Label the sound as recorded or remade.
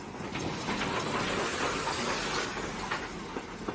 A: recorded